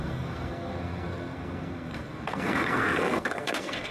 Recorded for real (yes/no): no